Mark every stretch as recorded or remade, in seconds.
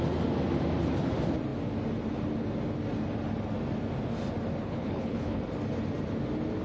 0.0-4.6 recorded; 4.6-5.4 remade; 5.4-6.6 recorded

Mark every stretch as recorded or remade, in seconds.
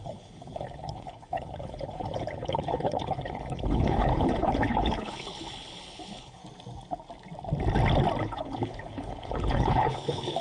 0.0-6.4 remade; 6.4-8.2 recorded; 8.2-10.4 remade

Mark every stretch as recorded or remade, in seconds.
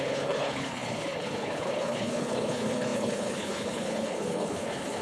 0.0-5.0 remade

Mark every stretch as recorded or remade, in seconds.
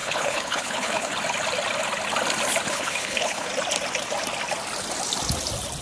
0.0-1.1 remade; 1.1-2.7 recorded; 2.7-3.5 remade; 3.5-5.8 recorded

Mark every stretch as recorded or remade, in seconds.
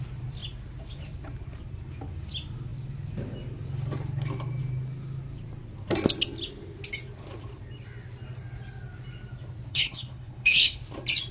0.0-9.7 recorded; 9.7-10.8 remade; 10.8-11.3 recorded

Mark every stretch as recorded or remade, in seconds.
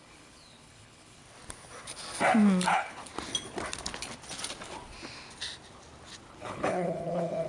0.0-1.2 remade; 1.2-2.7 recorded; 2.7-3.1 remade; 3.1-6.3 recorded; 6.3-7.5 remade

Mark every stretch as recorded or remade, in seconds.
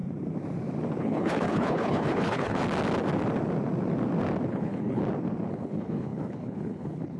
0.0-1.0 recorded; 1.0-2.6 remade; 2.6-4.5 recorded; 4.5-5.0 remade; 5.0-5.5 recorded; 5.5-7.2 remade